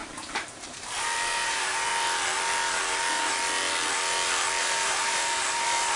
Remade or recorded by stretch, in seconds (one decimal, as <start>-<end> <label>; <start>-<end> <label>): 0.0-1.9 remade; 1.9-4.6 recorded; 4.6-6.0 remade